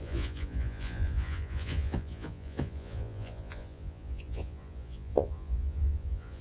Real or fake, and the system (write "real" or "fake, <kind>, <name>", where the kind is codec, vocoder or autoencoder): fake, vocoder, Vocos